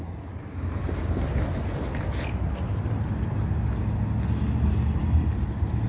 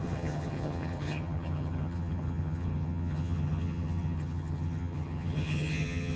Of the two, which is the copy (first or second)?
second